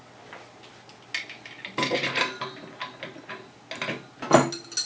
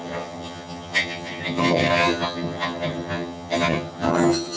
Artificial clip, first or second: second